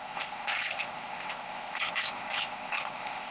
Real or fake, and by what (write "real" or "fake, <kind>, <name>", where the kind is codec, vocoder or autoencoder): fake, codec, ZipCodec